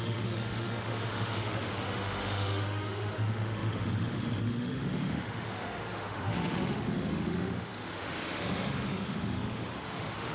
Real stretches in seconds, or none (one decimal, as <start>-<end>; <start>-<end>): none